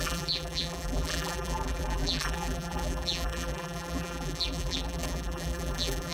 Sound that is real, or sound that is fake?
fake